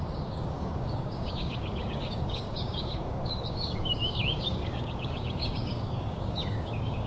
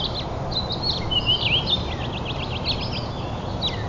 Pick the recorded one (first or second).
second